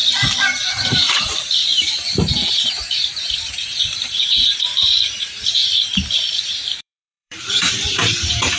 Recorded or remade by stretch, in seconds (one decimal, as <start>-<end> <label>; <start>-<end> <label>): 0.0-0.7 recorded; 0.7-1.7 remade; 1.7-2.5 recorded; 2.5-8.6 remade